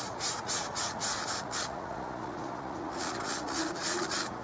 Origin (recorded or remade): remade